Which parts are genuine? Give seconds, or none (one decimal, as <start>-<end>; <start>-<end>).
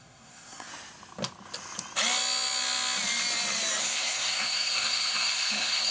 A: 0.7-3.8